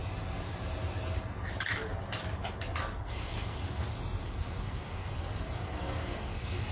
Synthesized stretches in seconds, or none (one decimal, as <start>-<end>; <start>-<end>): 2.8-3.8; 4.2-6.7